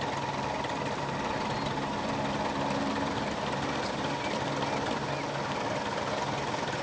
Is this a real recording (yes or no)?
yes